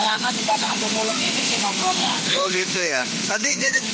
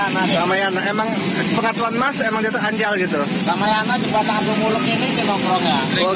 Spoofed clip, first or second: first